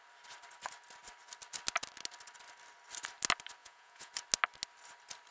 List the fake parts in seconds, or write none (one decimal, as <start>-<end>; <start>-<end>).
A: 3.6-4.1